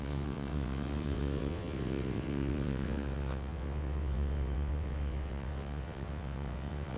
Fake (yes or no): yes